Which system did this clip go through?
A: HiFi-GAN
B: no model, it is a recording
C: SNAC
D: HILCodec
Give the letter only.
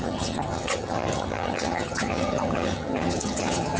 A